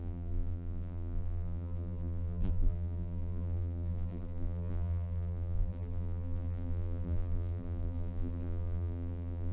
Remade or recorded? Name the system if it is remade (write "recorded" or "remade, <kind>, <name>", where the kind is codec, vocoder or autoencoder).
remade, vocoder, BigVGAN v2